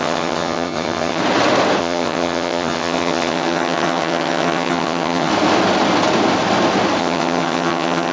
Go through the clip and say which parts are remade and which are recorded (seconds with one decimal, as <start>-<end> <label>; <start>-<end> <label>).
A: 0.0-1.2 remade; 1.2-1.8 recorded; 1.8-5.3 remade; 5.3-7.0 recorded; 7.0-8.1 remade